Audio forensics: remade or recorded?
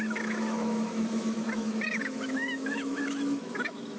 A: remade